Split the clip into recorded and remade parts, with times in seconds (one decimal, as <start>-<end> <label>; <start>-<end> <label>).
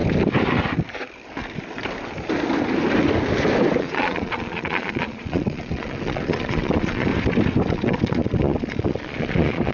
0.0-3.8 recorded; 3.8-7.1 remade; 7.1-7.7 recorded; 7.7-9.7 remade